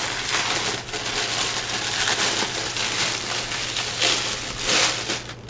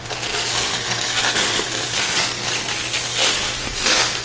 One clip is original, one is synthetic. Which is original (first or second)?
first